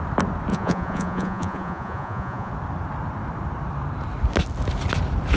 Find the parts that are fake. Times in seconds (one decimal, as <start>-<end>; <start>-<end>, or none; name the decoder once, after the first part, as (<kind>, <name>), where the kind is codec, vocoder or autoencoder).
0.5-2.5 (vocoder, Vocos)